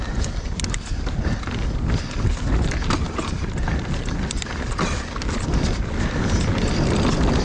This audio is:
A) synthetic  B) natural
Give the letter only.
B